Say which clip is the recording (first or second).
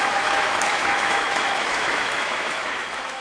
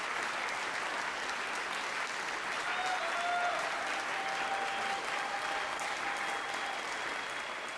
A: second